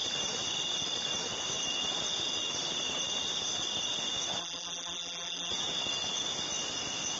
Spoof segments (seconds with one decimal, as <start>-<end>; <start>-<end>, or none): 4.4-5.5